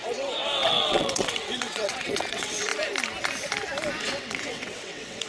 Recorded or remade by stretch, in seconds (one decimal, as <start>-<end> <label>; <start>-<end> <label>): 0.0-2.7 remade; 2.7-4.0 recorded; 4.0-5.3 remade